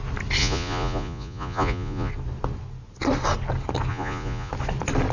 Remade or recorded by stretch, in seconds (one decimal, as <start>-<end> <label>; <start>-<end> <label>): 0.0-0.4 recorded; 0.4-2.1 remade; 2.1-3.9 recorded; 3.9-4.5 remade; 4.5-5.1 recorded